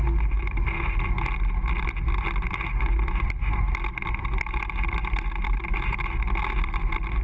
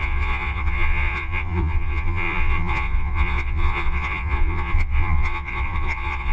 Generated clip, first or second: second